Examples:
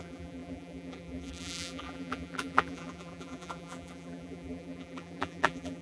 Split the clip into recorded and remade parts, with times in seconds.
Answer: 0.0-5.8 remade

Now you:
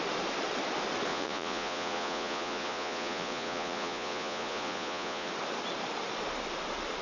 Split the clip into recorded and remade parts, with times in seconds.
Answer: 0.0-1.1 recorded; 1.1-5.3 remade; 5.3-7.0 recorded

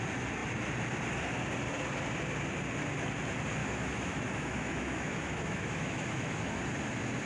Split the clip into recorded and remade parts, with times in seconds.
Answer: 0.0-3.6 recorded; 3.6-6.6 remade; 6.6-7.3 recorded

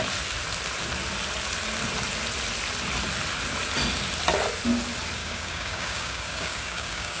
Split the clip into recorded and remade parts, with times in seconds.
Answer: 0.0-5.2 recorded; 5.2-7.2 remade

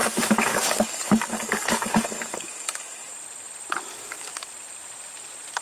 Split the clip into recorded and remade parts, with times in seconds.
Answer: 0.0-3.1 remade; 3.1-3.9 recorded; 3.9-4.5 remade; 4.5-5.6 recorded

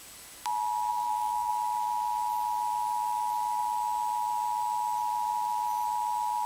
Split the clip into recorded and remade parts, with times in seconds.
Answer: 0.0-0.9 recorded; 0.9-1.5 remade; 1.5-6.5 recorded

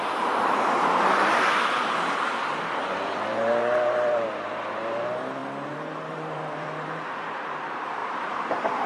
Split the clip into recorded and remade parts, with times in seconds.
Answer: 0.0-8.9 remade

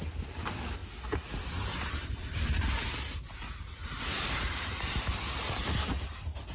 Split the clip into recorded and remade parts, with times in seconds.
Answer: 0.0-6.5 recorded